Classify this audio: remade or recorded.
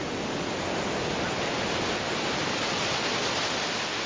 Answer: recorded